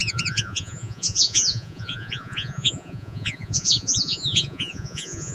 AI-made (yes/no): yes